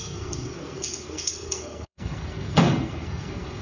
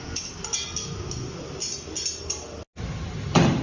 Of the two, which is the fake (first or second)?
first